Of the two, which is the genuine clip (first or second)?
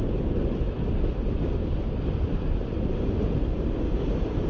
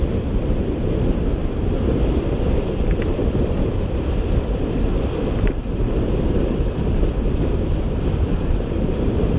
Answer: first